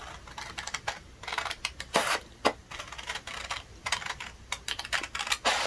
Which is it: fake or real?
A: real